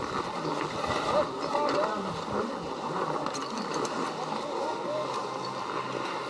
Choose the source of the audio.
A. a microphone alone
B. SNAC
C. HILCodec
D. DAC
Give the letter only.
A